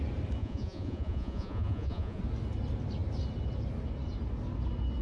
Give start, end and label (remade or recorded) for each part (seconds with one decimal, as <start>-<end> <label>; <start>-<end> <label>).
0.0-0.4 recorded; 0.4-2.2 remade; 2.2-5.0 recorded